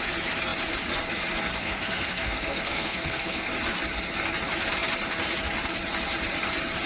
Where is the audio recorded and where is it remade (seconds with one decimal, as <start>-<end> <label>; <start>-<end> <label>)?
0.0-1.6 recorded; 1.6-3.5 remade; 3.5-6.9 recorded